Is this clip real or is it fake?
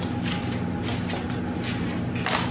real